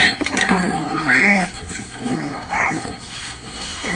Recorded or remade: remade